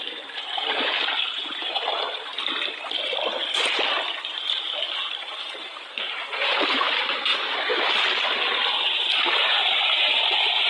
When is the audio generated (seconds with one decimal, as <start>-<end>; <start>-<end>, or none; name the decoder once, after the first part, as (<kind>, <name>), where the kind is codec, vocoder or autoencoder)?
0.0-2.3 (vocoder, BigVGAN v2); 5.2-7.3; 8.8-10.7